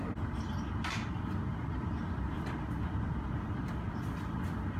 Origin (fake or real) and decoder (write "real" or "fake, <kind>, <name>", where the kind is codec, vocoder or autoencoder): real